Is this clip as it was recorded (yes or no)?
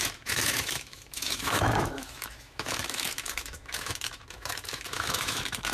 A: no